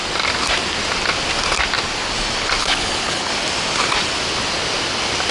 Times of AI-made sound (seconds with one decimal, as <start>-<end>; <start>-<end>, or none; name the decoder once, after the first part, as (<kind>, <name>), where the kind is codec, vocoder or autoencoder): 2.6-3.3 (codec, HILCodec)